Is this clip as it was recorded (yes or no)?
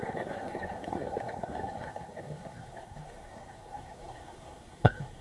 no